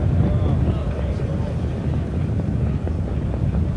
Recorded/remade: recorded